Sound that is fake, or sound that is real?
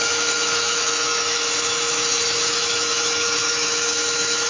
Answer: fake